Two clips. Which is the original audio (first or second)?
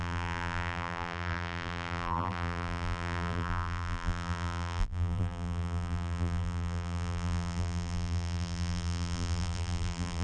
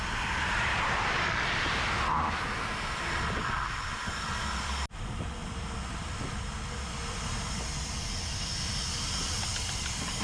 second